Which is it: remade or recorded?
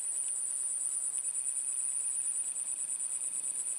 recorded